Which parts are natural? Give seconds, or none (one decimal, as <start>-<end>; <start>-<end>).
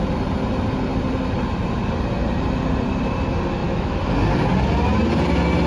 0.0-3.6; 4.1-5.7